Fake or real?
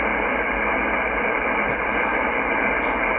real